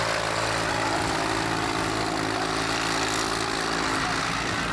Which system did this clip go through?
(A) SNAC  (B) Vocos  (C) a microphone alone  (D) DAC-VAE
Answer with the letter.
C